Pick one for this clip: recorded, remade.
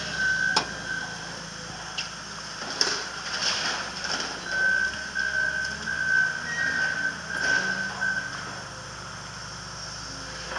recorded